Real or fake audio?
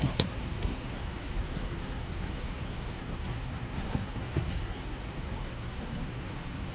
fake